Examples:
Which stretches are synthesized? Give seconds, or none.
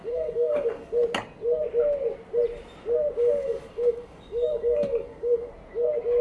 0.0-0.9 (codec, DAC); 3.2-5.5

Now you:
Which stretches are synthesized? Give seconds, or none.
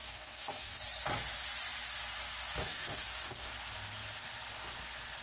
0.0-0.8 (codec, DAC); 2.7-3.5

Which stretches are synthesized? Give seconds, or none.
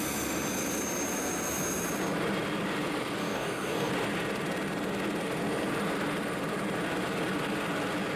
3.2-3.9 (codec, DAC)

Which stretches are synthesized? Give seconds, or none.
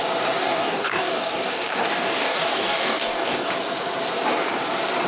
0.4-3.5 (codec, DAC)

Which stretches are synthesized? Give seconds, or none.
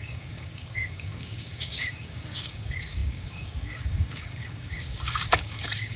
0.0-6.0 (codec, DAC)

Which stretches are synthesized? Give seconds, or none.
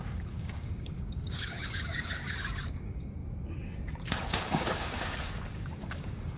0.0-3.2 (codec, DAC); 4.1-6.4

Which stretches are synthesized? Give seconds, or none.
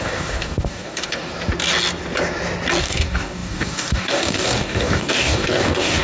0.0-1.3 (codec, DAC); 2.8-6.0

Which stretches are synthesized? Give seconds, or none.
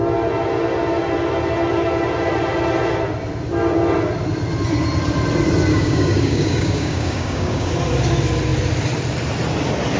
5.7-7.7 (codec, DAC)